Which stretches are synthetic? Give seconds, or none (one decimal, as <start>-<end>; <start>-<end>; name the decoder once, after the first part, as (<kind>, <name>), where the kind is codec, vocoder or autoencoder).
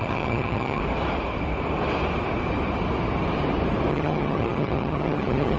0.0-0.8 (vocoder, HiFi-GAN); 3.9-5.6